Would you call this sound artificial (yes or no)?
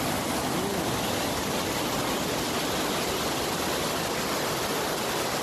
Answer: no